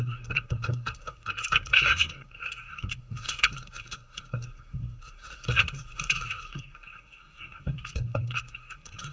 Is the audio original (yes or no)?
no